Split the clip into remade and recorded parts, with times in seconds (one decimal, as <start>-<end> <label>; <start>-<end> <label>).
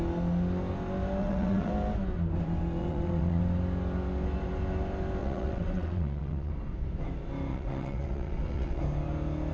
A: 0.0-1.2 recorded; 1.2-1.7 remade; 1.7-2.8 recorded; 2.8-3.4 remade; 3.4-5.2 recorded; 5.2-6.5 remade; 6.5-7.5 recorded; 7.5-8.8 remade; 8.8-9.5 recorded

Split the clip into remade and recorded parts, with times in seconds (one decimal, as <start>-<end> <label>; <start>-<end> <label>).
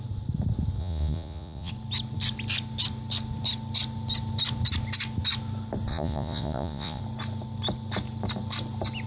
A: 0.0-0.8 recorded; 0.8-1.7 remade; 1.7-5.9 recorded; 5.9-7.0 remade; 7.0-9.1 recorded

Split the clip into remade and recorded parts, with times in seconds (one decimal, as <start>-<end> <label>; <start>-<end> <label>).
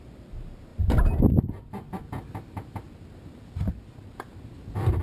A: 0.0-5.0 recorded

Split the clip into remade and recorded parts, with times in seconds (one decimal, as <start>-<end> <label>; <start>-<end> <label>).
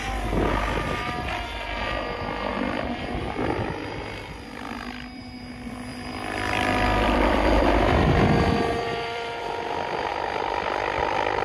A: 0.0-2.5 recorded; 2.5-3.2 remade; 3.2-5.9 recorded; 5.9-9.4 remade; 9.4-10.1 recorded; 10.1-11.0 remade; 11.0-11.4 recorded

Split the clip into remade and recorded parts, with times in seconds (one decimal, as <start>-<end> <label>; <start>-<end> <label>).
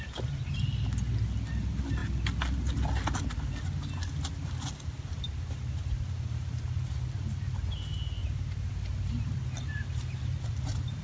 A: 0.0-5.1 recorded; 5.1-6.9 remade; 6.9-8.2 recorded; 8.2-8.7 remade; 8.7-11.0 recorded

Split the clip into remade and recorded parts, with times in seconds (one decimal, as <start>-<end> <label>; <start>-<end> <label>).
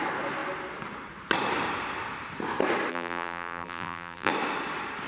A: 0.0-2.9 recorded; 2.9-4.3 remade; 4.3-5.1 recorded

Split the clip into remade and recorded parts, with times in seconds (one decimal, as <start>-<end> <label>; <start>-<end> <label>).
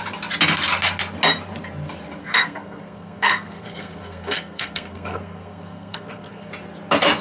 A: 0.0-2.2 recorded; 2.2-6.5 remade; 6.5-7.2 recorded